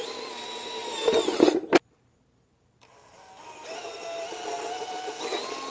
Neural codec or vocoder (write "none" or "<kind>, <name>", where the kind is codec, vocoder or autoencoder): none